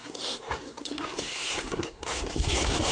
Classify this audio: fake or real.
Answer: fake